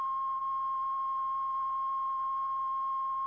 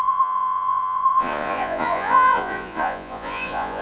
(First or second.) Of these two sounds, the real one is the first